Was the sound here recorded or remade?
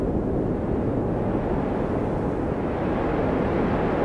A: recorded